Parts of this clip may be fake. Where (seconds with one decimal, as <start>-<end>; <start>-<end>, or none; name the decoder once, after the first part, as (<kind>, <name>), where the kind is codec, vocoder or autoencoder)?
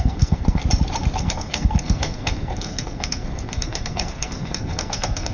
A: 0.0-0.6 (codec, SNAC); 1.2-5.3